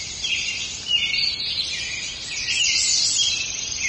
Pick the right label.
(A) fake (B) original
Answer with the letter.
B